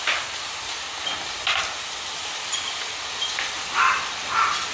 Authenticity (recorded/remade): recorded